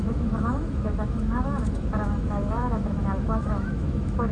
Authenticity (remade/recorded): remade